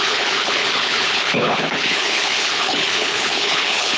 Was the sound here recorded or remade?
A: remade